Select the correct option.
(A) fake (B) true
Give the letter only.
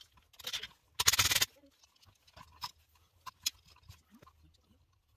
B